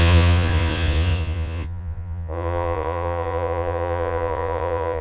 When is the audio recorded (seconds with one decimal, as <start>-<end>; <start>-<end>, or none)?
none